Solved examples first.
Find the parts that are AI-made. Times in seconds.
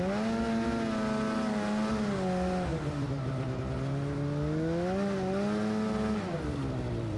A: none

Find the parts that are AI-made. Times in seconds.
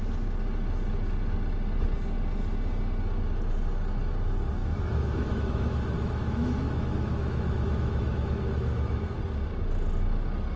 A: 4.6-9.2 (autoencoder, DAC-VAE)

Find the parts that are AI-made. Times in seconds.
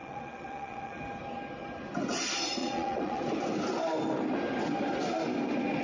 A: 0.0-1.0 (vocoder, Vocos); 2.6-3.2